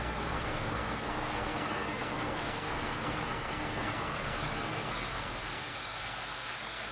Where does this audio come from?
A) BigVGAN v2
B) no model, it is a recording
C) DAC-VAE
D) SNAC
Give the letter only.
D